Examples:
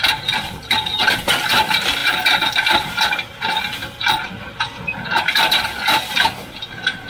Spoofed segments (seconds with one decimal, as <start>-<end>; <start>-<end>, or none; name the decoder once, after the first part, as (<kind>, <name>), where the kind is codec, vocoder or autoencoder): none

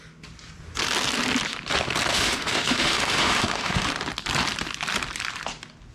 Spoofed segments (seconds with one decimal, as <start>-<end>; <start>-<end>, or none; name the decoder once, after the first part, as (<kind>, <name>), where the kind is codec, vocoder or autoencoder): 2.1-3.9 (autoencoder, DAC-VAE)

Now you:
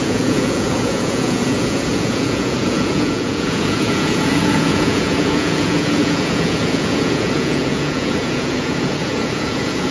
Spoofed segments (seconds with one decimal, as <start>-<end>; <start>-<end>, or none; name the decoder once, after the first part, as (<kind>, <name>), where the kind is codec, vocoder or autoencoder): 0.0-9.9 (vocoder, Vocos)

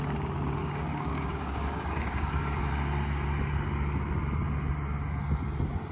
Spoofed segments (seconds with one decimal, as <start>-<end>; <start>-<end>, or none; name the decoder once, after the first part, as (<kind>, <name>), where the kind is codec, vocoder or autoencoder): 0.6-2.7 (codec, DAC)

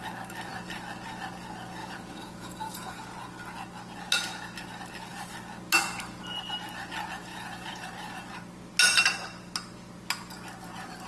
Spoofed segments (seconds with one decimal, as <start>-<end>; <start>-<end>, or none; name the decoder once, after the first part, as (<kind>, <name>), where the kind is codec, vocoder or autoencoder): 1.8-3.0 (vocoder, Vocos); 7.3-7.9

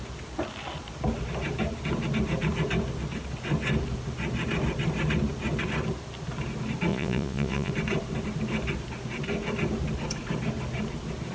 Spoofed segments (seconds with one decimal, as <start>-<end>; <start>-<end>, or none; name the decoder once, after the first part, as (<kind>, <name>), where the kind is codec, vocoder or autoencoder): 6.9-7.7 (vocoder, Vocos)

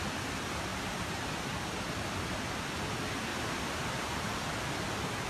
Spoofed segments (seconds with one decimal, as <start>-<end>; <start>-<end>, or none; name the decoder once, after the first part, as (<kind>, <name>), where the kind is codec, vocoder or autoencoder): 0.7-1.7 (vocoder, BigVGAN v2); 3.3-4.4

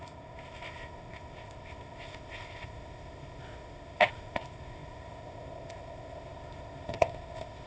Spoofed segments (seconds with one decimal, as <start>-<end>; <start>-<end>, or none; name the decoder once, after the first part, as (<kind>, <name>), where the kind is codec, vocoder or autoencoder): 0.0-7.7 (codec, ZipCodec)